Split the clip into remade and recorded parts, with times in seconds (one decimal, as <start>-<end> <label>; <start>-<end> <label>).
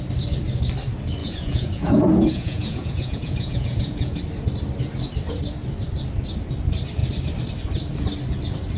0.0-1.2 recorded; 1.2-4.2 remade; 4.2-8.8 recorded